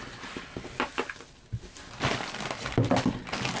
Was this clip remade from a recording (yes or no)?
no